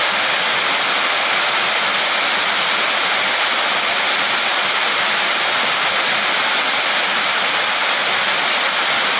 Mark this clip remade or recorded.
recorded